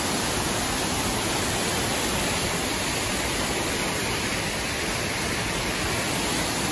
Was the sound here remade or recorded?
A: remade